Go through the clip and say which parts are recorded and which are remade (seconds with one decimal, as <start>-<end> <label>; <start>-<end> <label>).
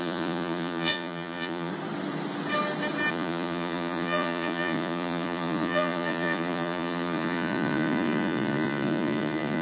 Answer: 0.0-1.7 remade; 1.7-3.1 recorded; 3.1-9.6 remade